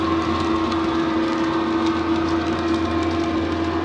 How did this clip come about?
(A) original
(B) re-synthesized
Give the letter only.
A